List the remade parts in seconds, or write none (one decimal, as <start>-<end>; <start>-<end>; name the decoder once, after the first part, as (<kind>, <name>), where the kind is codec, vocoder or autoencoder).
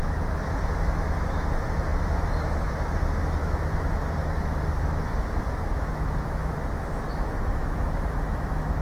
0.0-8.8 (autoencoder, DAC-VAE)